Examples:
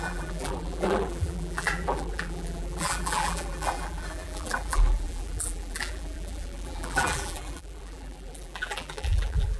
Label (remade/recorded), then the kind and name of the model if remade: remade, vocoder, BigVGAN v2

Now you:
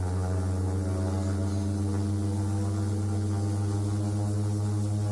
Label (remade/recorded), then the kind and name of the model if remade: recorded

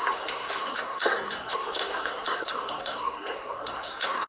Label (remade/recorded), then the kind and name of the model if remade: remade, codec, SNAC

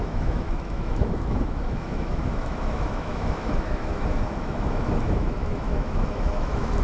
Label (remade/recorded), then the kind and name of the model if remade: remade, autoencoder, DAC-VAE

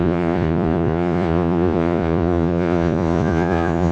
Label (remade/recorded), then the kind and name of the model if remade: remade, vocoder, Vocos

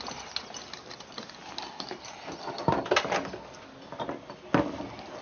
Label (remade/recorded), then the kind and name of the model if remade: recorded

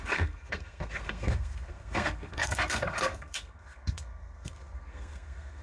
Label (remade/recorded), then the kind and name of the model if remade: remade, codec, SNAC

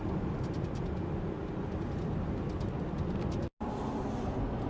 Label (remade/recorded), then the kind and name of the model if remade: recorded